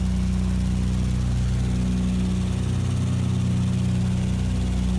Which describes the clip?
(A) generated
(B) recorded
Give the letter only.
B